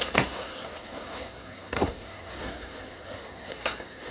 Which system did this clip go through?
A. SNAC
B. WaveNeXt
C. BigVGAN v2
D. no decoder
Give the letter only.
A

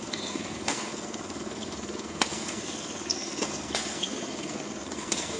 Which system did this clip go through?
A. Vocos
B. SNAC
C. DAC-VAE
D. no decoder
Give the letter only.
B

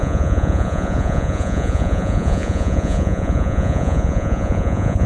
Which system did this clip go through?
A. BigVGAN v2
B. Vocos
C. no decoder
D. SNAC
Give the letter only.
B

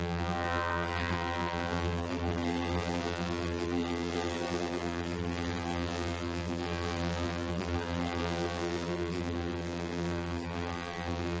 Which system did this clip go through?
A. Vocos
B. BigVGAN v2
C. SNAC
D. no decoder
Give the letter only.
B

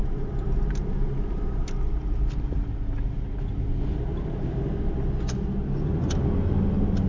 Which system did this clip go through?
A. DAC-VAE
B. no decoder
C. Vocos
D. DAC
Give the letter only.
B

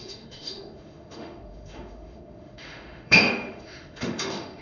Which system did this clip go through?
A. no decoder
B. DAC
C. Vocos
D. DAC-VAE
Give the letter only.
D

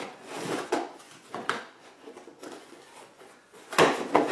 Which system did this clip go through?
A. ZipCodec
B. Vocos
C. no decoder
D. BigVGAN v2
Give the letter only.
B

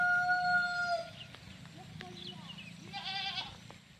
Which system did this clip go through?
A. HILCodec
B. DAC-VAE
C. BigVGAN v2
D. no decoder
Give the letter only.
D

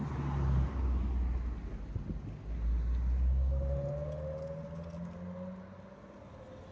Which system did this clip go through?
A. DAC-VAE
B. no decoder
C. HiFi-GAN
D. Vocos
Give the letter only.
B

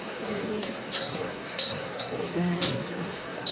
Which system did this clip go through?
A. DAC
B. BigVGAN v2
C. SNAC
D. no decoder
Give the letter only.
C